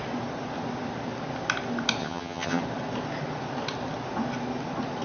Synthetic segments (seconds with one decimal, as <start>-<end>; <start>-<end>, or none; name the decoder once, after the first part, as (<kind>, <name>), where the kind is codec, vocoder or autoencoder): 2.0-2.6 (vocoder, HiFi-GAN)